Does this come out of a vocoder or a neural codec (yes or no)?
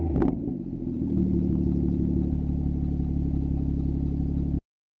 yes